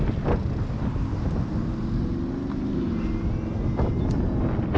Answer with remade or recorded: recorded